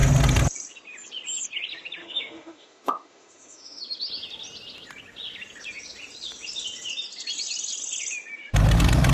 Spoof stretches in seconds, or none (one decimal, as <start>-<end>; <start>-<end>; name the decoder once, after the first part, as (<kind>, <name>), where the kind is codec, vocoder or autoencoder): 2.0-3.8 (autoencoder, DAC-VAE)